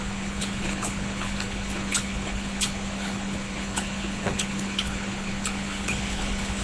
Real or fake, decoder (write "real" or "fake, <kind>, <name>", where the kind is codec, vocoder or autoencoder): fake, codec, HILCodec